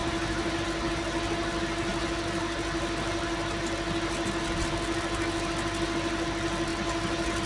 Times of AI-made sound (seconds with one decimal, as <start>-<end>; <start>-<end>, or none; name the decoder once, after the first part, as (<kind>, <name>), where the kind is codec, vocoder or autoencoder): 0.0-0.6 (vocoder, BigVGAN v2)

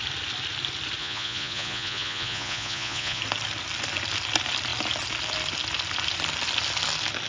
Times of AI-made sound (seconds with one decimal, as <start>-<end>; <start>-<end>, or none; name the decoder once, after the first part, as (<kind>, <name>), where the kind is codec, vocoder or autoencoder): 1.0-3.2 (vocoder, Vocos)

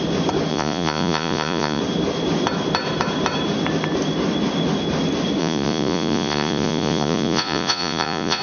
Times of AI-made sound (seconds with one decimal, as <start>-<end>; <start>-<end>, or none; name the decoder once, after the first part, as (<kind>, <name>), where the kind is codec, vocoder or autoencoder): 0.5-1.8 (vocoder, Vocos); 5.4-8.4

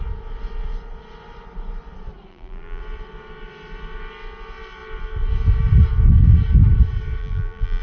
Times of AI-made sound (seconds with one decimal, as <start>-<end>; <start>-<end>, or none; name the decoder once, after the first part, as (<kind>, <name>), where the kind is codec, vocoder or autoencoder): 2.3-2.8 (vocoder, BigVGAN v2); 7.2-7.8

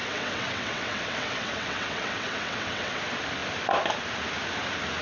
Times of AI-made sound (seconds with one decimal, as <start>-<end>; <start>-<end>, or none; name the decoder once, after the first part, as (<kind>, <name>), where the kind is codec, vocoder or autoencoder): 0.0-3.0 (vocoder, WaveNeXt)

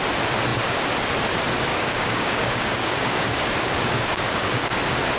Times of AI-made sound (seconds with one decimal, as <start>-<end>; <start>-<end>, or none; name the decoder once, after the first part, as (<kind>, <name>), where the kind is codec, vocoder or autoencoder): 1.7-4.8 (codec, DAC)